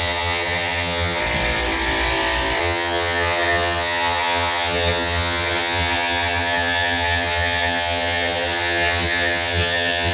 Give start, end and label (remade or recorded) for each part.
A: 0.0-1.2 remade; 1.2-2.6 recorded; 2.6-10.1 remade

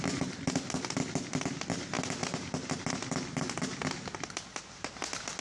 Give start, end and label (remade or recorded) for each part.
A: 0.0-5.4 recorded

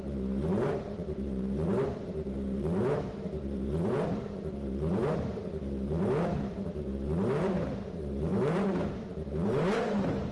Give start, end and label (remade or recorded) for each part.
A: 0.0-10.3 remade

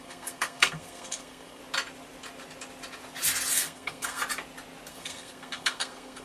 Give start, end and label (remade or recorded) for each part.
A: 0.0-1.6 remade; 1.6-3.5 recorded; 3.5-4.2 remade; 4.2-4.9 recorded; 4.9-6.2 remade

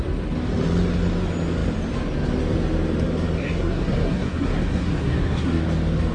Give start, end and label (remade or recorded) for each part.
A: 0.0-3.4 recorded; 3.4-5.6 remade; 5.6-6.1 recorded

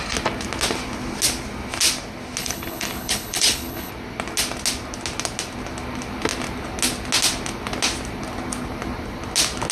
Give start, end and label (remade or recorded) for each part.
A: 0.0-2.4 recorded; 2.4-3.9 remade; 3.9-9.7 recorded

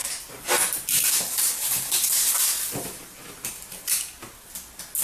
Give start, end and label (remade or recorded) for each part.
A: 0.0-5.0 recorded